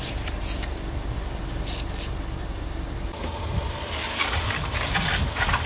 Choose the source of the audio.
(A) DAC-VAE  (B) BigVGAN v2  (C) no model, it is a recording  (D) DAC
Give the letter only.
C